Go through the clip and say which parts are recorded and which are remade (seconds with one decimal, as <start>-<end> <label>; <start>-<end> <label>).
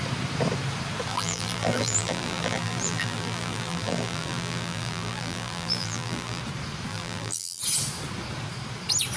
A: 0.0-1.1 recorded; 1.1-6.4 remade; 6.4-6.9 recorded; 6.9-7.6 remade; 7.6-9.2 recorded